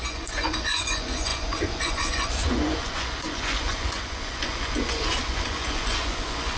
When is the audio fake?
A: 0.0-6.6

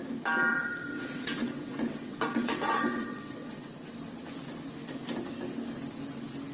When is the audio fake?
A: 0.5-3.7

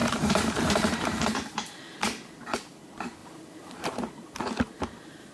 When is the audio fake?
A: 0.0-1.8; 3.2-3.9

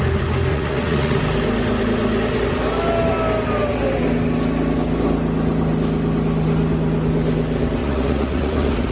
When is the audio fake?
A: 0.5-1.2; 7.8-8.9

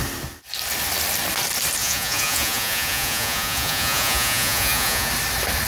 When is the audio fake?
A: 1.8-5.1

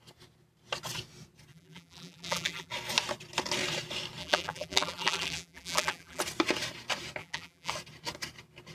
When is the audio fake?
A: 1.5-2.7; 4.2-6.2; 7.2-7.7